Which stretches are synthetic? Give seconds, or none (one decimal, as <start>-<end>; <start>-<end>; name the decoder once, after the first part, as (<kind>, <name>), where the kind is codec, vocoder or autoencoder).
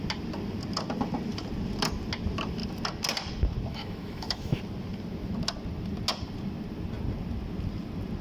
3.7-4.6 (autoencoder, DAC-VAE)